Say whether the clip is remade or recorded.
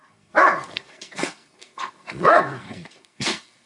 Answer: remade